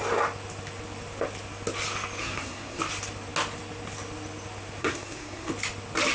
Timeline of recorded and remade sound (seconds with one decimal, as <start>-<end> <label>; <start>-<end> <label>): 0.0-2.2 recorded; 2.2-2.8 remade; 2.8-4.8 recorded; 4.8-5.5 remade; 5.5-6.1 recorded